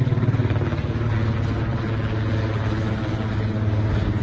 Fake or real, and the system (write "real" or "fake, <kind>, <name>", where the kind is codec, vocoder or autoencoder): real